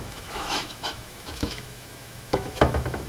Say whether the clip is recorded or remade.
remade